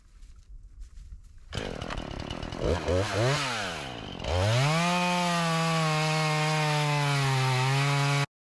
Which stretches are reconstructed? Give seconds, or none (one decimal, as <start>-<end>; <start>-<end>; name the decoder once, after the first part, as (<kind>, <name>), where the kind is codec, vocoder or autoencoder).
1.2-2.5 (vocoder, BigVGAN v2)